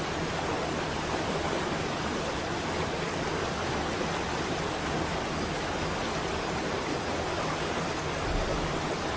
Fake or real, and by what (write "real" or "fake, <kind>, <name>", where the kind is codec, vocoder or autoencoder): real